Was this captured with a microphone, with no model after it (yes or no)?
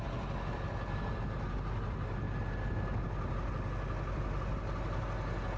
yes